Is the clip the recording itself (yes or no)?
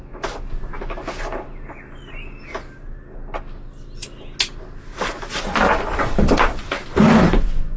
yes